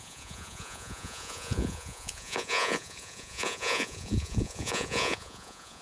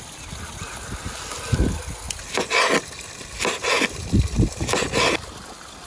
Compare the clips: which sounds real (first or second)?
second